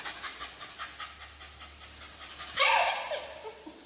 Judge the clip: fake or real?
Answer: real